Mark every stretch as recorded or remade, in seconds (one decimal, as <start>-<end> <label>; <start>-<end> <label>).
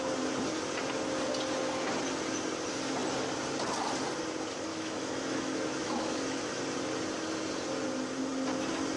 0.0-4.7 recorded; 4.7-6.6 remade; 6.6-9.0 recorded